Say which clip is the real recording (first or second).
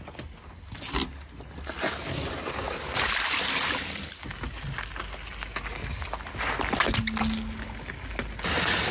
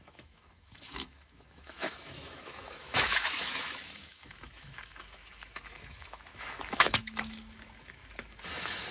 first